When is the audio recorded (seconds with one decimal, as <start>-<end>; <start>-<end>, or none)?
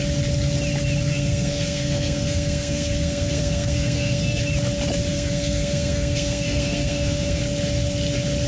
0.0-1.1; 4.4-5.1; 7.4-8.5